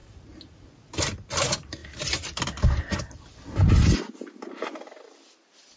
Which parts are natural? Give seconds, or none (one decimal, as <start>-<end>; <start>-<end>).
0.0-5.8